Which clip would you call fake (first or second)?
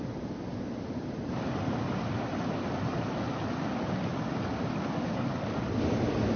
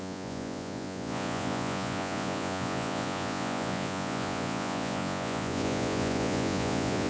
second